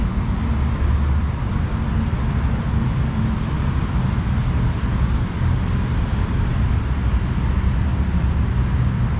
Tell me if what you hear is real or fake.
real